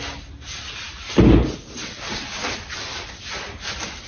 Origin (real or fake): real